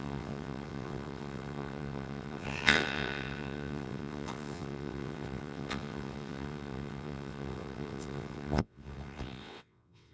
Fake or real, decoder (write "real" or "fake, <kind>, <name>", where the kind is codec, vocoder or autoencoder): fake, vocoder, WaveNeXt